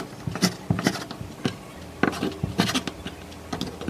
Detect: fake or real real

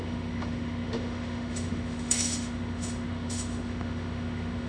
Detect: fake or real fake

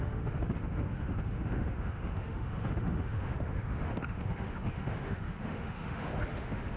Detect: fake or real fake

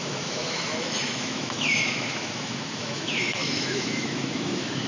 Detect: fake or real fake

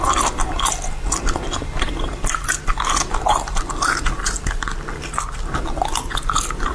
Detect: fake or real real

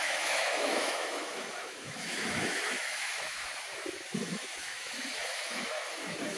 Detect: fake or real fake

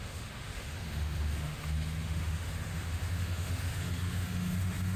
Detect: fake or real fake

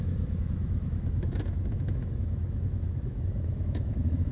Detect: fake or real fake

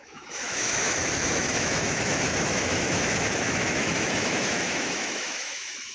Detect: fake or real fake